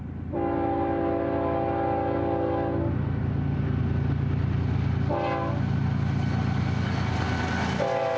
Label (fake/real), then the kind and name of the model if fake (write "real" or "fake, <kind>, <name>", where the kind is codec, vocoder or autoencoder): real